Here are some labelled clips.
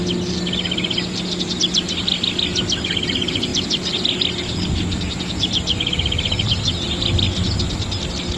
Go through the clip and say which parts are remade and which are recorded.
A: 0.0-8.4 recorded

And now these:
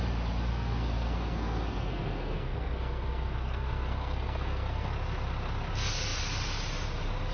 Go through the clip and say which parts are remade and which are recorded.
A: 0.0-0.5 recorded; 0.5-4.9 remade; 4.9-7.3 recorded